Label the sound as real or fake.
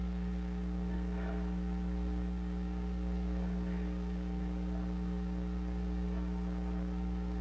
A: fake